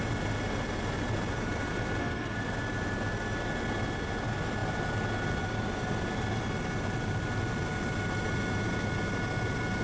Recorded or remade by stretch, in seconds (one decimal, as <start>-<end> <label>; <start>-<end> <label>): 0.0-2.0 recorded; 2.0-2.5 remade; 2.5-9.8 recorded